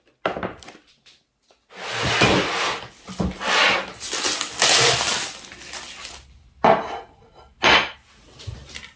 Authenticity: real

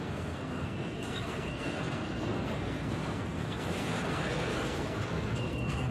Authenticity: fake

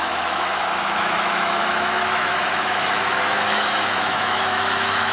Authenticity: fake